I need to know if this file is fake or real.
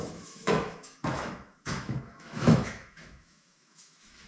fake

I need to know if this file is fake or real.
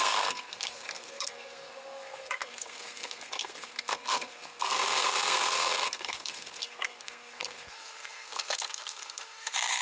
fake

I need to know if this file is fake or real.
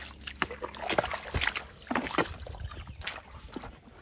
real